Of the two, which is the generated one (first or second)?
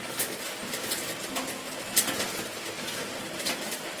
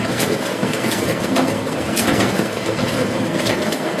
second